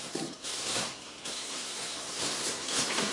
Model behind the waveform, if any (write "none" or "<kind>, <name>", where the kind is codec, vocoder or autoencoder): codec, SNAC